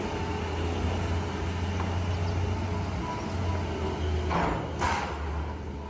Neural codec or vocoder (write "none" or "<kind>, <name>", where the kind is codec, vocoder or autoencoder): none